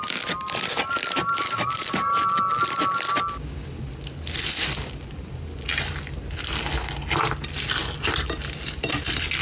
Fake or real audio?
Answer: real